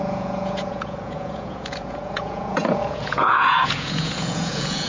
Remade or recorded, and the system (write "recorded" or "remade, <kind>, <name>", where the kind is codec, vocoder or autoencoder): remade, vocoder, Vocos